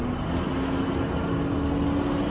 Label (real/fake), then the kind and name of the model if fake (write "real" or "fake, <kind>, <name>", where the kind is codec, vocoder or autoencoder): real